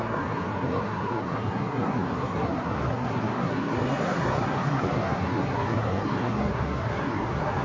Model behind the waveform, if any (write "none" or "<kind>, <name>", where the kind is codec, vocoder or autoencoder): codec, SNAC